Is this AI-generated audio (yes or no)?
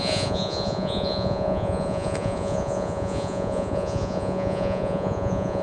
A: yes